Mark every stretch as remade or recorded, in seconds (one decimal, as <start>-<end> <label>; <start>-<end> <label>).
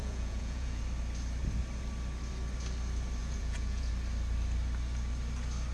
0.0-0.8 remade; 0.8-3.2 recorded; 3.2-3.9 remade; 3.9-5.7 recorded